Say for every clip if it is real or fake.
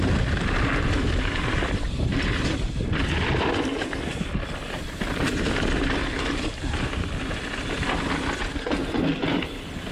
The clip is real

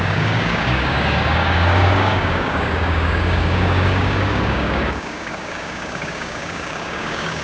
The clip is fake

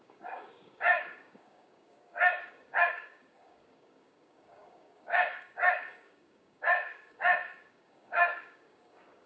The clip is fake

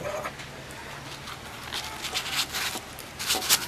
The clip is real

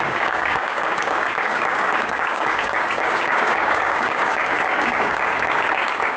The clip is fake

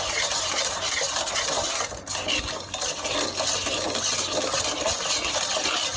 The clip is real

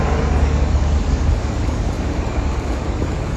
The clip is fake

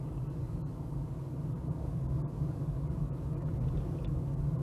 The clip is fake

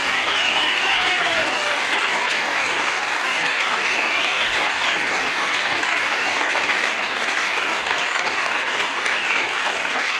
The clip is fake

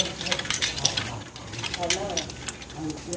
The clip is real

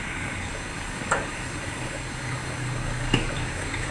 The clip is fake